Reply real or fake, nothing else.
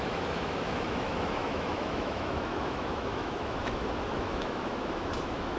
fake